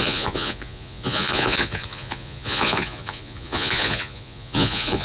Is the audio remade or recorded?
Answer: remade